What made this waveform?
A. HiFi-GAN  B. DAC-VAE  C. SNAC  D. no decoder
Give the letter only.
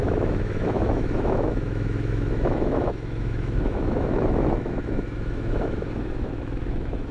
B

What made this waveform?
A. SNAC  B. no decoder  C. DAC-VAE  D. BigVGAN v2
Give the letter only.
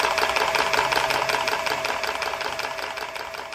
D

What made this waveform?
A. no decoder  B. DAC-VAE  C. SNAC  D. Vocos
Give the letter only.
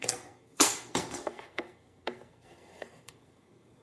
C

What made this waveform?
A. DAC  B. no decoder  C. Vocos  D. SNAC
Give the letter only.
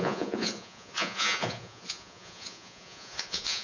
C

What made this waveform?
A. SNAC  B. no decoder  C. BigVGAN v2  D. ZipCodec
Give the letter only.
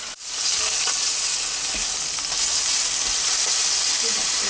B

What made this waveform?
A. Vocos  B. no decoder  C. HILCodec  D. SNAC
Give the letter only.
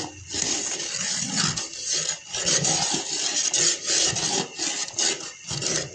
B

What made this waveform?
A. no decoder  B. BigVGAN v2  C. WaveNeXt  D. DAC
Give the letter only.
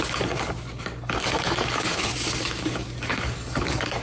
D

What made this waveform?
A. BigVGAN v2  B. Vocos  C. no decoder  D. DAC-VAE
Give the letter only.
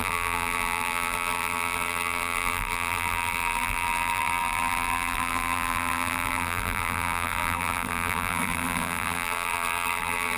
A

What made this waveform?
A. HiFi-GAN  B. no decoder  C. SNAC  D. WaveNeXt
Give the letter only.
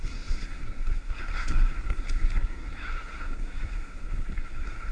C